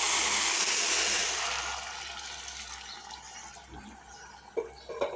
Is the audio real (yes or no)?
yes